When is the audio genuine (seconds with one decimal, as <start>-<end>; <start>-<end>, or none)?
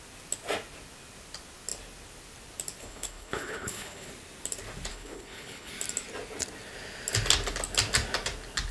0.0-2.8; 4.1-4.9; 5.7-8.7